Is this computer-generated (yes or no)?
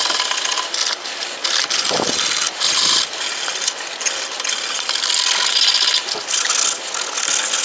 no